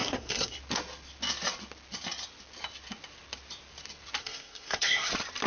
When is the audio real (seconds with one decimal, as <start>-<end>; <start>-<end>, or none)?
0.6-4.2; 5.1-5.5